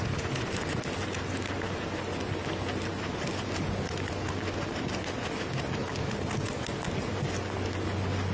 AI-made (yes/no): no